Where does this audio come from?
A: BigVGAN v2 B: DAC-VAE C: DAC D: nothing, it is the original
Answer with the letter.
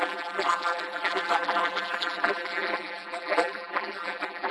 A